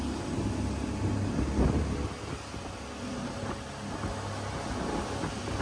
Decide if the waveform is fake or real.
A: real